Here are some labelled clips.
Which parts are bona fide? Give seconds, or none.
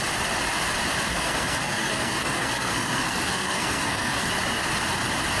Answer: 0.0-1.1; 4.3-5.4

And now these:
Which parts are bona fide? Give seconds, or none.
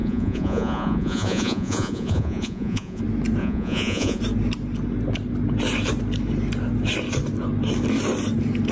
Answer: 3.0-3.4; 4.2-8.7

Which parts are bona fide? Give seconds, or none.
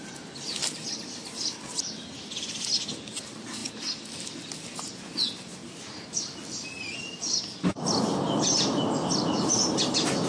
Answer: 0.0-10.3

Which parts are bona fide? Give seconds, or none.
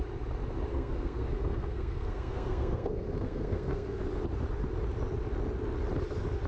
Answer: 0.0-0.7; 4.0-6.5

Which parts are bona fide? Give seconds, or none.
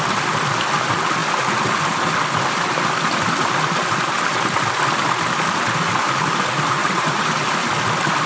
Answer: 0.0-6.8; 7.5-8.3